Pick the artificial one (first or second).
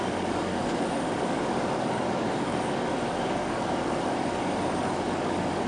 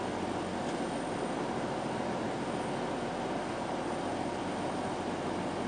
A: first